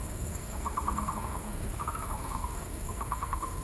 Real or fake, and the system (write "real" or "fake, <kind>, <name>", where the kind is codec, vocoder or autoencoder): fake, codec, SNAC